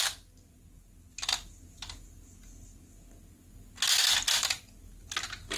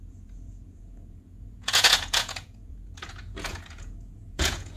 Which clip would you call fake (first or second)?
second